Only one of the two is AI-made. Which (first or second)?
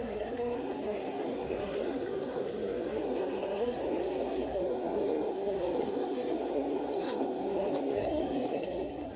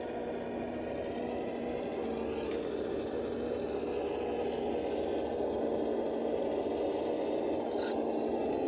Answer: first